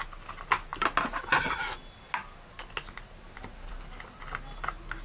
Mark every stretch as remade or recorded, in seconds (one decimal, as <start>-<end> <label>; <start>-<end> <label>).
0.0-5.0 recorded